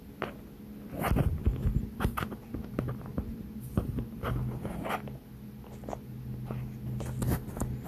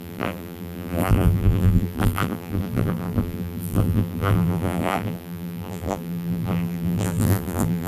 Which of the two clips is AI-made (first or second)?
second